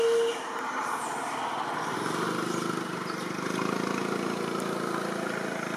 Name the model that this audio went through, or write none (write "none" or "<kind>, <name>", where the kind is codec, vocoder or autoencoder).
none